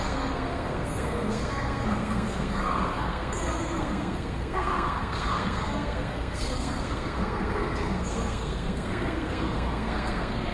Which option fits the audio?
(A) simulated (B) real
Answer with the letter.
A